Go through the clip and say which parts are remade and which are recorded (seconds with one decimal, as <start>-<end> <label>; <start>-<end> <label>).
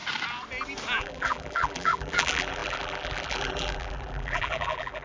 0.0-1.0 recorded; 1.0-5.0 remade